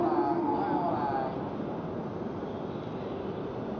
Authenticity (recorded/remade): recorded